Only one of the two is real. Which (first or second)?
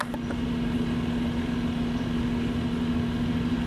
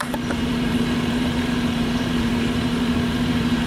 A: first